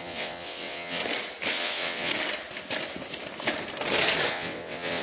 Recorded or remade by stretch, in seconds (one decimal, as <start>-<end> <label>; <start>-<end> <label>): 0.0-1.0 remade; 1.0-1.5 recorded; 1.5-2.1 remade; 2.1-4.3 recorded; 4.3-5.0 remade